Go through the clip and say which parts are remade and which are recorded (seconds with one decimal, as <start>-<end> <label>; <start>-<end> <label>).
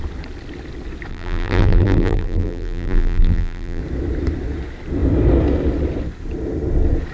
0.0-1.1 recorded; 1.1-3.8 remade; 3.8-7.1 recorded